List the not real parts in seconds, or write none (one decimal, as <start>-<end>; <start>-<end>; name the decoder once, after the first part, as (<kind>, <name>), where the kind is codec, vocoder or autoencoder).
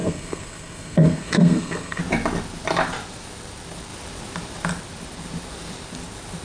0.0-2.0 (codec, SNAC)